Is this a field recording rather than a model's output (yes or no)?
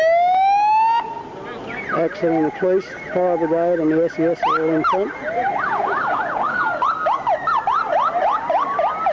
yes